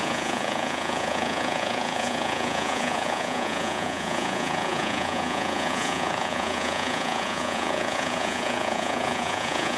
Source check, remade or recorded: remade